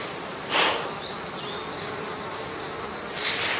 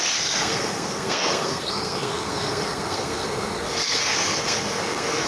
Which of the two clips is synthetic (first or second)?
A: second